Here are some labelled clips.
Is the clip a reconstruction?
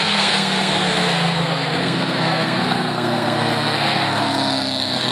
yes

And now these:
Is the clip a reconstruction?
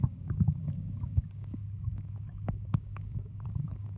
yes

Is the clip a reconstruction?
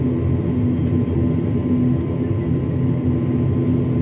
no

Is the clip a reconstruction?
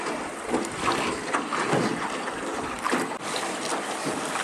no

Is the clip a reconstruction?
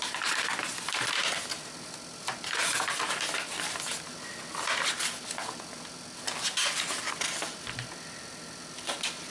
no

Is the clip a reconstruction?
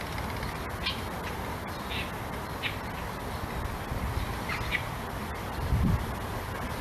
no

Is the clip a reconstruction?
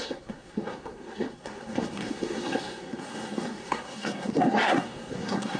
yes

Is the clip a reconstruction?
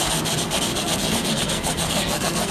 yes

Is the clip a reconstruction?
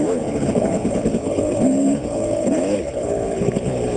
yes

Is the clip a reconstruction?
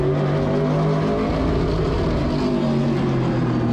no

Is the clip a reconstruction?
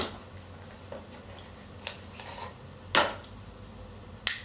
no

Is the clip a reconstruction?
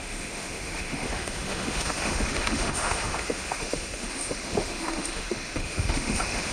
yes